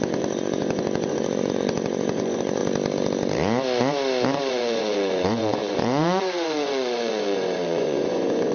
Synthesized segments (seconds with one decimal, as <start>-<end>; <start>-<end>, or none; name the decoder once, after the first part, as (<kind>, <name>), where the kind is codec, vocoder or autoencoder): 0.0-2.6 (vocoder, Vocos); 4.5-8.5